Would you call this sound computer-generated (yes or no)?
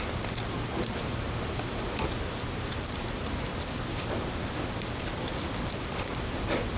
no